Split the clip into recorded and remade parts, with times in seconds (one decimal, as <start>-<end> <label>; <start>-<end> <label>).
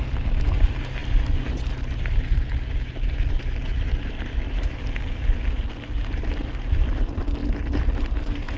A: 0.0-8.6 recorded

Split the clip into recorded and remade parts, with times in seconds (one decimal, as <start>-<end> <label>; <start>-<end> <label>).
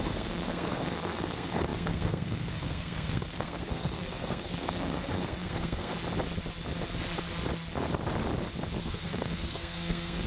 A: 0.0-5.9 remade; 5.9-8.8 recorded; 8.8-10.3 remade